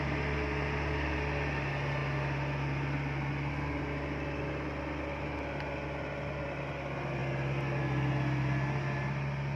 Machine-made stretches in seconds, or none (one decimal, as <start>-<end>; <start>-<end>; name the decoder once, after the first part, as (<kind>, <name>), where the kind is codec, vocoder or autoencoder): none